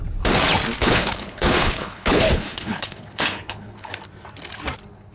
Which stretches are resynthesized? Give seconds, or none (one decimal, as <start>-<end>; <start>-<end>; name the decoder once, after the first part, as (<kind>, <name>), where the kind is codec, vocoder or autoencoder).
0.8-3.9 (codec, HILCodec)